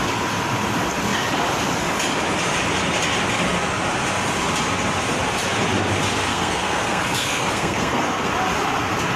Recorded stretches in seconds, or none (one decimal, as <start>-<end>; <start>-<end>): 0.0-6.3; 8.3-9.2